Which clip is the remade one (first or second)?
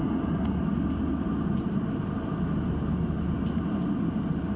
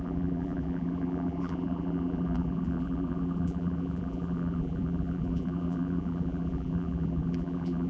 second